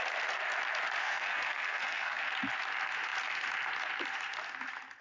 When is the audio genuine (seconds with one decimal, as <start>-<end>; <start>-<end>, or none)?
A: 0.0-1.0; 2.3-5.0